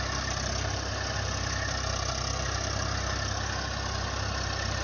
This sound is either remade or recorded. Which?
recorded